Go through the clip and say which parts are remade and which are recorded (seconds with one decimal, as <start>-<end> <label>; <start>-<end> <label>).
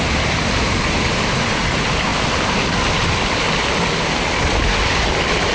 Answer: 0.0-5.5 recorded